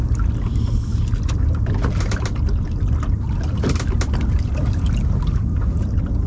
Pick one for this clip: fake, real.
real